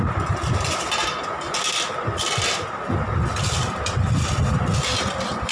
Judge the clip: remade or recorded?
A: recorded